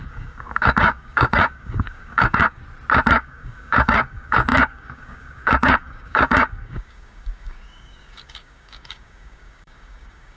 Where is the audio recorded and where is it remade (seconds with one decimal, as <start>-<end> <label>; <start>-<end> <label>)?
0.0-2.6 remade; 2.6-3.1 recorded; 3.1-10.4 remade